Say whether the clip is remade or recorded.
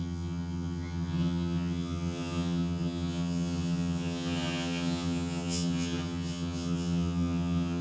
remade